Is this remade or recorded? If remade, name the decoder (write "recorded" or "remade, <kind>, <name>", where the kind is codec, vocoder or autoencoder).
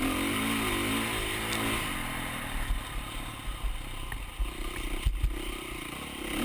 recorded